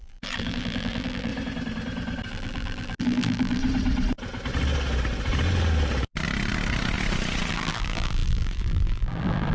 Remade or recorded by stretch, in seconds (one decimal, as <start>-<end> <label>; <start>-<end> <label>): 0.0-1.3 remade; 1.3-2.3 recorded; 2.3-3.6 remade; 3.6-7.5 recorded; 7.5-9.5 remade